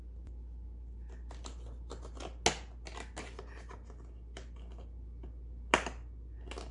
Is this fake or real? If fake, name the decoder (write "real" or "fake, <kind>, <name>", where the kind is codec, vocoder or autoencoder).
real